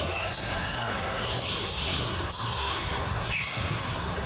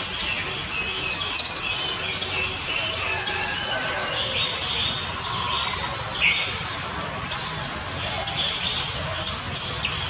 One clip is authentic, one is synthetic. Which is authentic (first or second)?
second